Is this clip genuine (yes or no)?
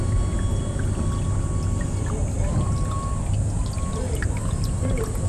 yes